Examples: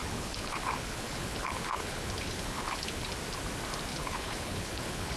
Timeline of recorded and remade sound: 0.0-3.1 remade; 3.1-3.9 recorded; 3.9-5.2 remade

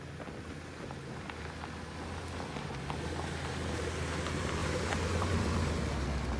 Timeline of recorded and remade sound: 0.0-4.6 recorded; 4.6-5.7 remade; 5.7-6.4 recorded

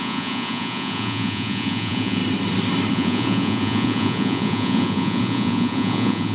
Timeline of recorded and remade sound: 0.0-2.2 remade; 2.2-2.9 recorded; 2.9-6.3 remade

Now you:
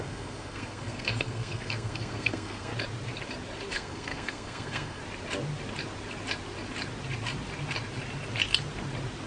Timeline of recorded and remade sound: 0.0-2.7 remade; 2.7-3.7 recorded; 3.7-5.0 remade; 5.0-9.3 recorded